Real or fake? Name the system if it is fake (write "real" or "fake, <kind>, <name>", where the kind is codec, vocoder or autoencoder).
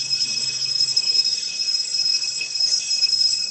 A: fake, codec, HILCodec